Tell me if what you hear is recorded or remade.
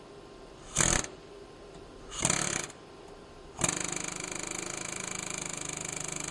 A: recorded